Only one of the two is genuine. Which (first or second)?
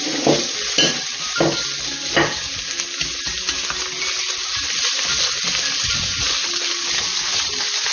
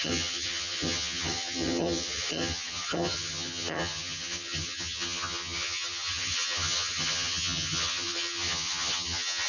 first